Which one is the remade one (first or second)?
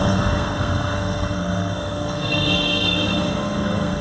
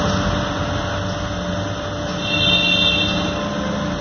first